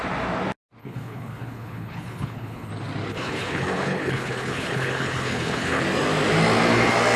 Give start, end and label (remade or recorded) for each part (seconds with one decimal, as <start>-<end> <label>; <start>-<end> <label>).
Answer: 0.0-0.8 recorded; 0.8-2.7 remade; 2.7-3.1 recorded; 3.1-5.8 remade; 5.8-7.2 recorded